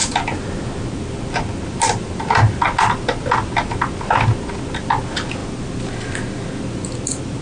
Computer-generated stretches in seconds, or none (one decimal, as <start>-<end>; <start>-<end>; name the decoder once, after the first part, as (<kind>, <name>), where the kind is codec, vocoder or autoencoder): none